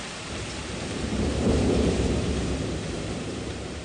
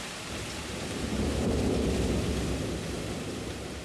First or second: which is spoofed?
first